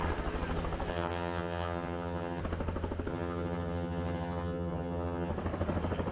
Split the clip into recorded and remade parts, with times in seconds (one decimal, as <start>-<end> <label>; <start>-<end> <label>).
0.0-0.9 recorded; 0.9-2.4 remade; 2.4-3.1 recorded; 3.1-5.3 remade; 5.3-6.1 recorded